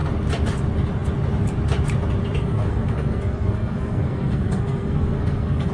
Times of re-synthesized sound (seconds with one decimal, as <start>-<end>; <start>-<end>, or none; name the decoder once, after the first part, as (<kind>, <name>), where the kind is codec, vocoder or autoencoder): 2.4-5.7 (codec, SNAC)